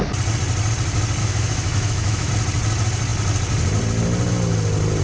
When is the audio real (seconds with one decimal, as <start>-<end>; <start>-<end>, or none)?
0.0-1.2; 2.3-5.0